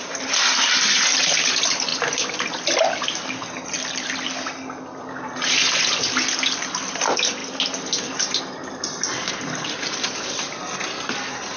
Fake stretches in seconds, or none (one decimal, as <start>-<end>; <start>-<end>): none